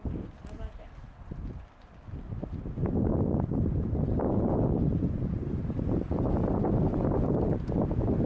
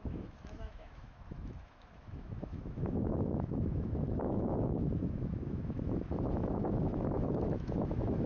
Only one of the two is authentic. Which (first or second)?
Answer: first